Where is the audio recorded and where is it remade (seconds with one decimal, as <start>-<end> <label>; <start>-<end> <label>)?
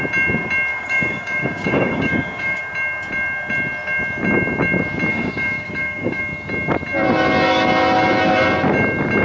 0.0-0.7 recorded; 0.7-2.6 remade; 2.6-5.1 recorded; 5.1-6.2 remade; 6.2-9.2 recorded